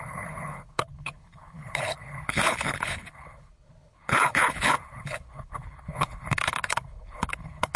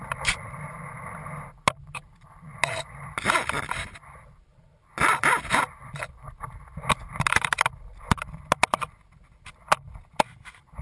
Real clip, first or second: second